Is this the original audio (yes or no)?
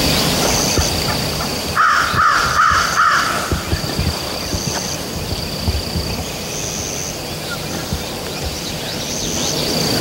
yes